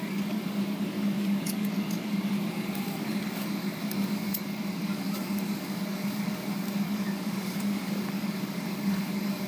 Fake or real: fake